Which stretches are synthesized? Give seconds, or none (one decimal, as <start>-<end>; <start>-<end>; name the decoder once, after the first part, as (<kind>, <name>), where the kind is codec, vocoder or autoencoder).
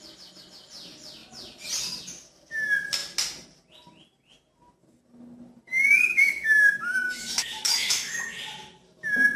6.0-8.1 (autoencoder, DAC-VAE)